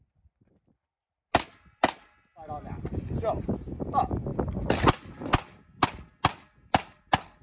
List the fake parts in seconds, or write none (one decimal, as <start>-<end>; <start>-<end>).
none

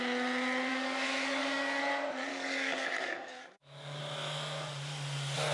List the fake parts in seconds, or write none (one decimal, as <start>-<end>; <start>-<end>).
0.7-1.8; 2.3-4.0

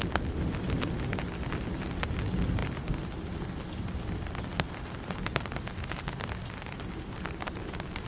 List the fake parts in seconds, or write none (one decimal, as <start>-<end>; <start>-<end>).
none

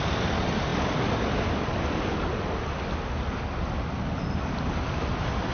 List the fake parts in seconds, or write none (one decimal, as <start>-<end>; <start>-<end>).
none

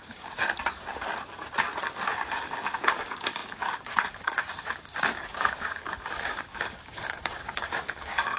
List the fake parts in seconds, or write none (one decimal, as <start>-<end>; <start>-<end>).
0.0-0.4; 2.8-8.4

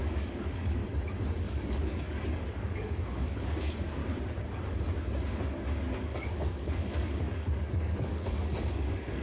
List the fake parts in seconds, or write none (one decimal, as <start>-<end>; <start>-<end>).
0.0-0.8; 1.4-4.0; 6.0-9.2

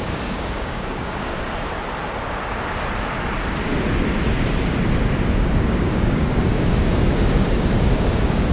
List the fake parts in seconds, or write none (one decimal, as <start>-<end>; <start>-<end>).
0.0-1.3; 5.2-8.5